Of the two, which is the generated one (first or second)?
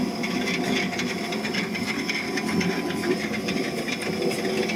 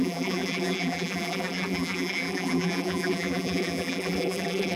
second